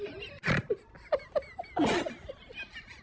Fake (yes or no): no